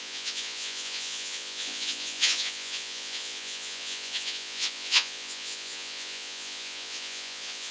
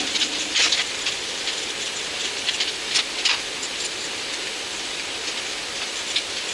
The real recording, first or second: second